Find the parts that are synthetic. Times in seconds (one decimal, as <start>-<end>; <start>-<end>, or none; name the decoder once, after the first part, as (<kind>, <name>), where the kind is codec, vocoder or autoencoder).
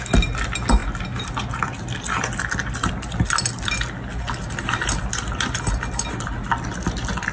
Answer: none